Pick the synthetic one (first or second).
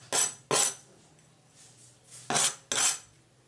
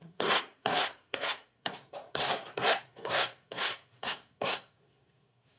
second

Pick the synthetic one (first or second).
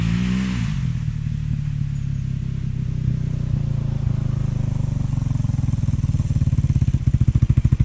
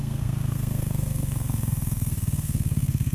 second